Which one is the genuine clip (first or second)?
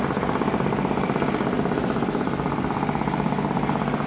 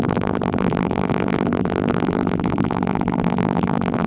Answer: first